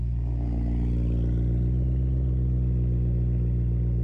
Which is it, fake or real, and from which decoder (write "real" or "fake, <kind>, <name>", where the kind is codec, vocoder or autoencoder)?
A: real